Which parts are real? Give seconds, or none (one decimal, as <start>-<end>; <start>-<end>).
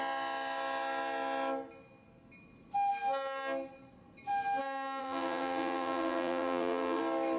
0.0-5.0; 7.0-7.4